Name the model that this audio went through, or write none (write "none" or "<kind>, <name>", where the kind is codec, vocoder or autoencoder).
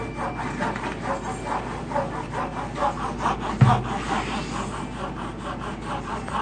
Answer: none